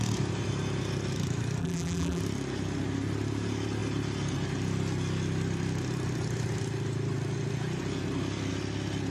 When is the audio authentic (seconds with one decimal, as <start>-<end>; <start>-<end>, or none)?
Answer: 0.0-1.6; 2.2-9.1